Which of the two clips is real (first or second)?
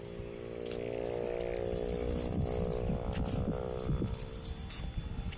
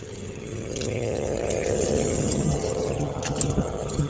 first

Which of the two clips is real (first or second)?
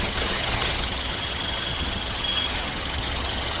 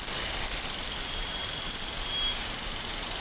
second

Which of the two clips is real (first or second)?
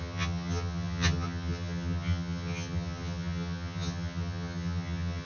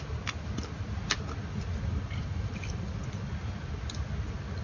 second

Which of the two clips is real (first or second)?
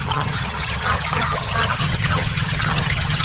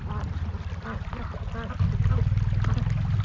second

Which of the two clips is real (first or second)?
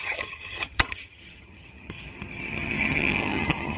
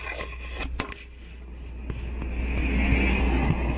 second